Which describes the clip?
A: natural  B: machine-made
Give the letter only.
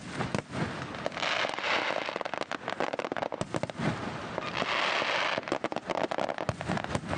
A